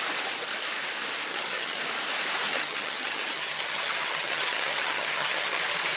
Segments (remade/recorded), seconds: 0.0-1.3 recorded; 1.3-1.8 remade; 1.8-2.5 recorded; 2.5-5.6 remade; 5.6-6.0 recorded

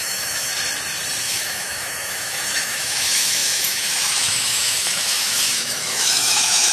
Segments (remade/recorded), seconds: 0.0-0.5 remade; 0.5-1.2 recorded; 1.2-6.7 remade

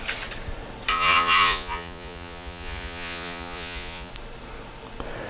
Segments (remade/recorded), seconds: 0.0-0.9 recorded; 0.9-4.1 remade; 4.1-5.3 recorded

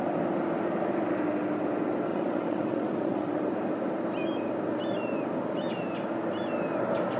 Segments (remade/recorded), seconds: 0.0-2.1 recorded; 2.1-3.4 remade; 3.4-7.2 recorded

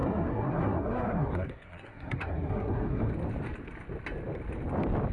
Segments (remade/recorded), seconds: 0.0-3.1 remade; 3.1-5.1 recorded

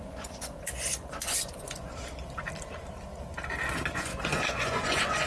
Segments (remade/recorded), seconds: 0.0-2.0 remade; 2.0-3.9 recorded; 3.9-5.3 remade

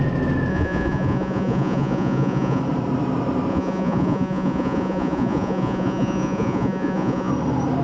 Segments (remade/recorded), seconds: 0.0-0.5 recorded; 0.5-2.6 remade; 2.6-3.5 recorded; 3.5-7.3 remade; 7.3-7.8 recorded